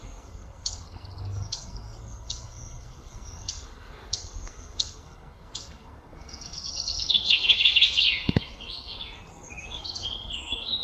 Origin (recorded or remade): remade